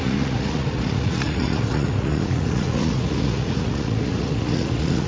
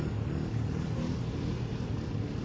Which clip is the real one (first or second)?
second